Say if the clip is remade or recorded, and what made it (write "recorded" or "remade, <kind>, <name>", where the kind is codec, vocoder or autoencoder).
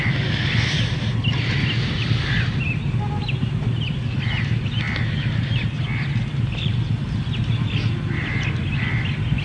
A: recorded